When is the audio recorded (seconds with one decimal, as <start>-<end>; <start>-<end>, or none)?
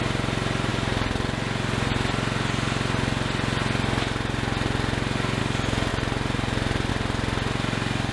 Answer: 0.0-5.9; 6.9-8.1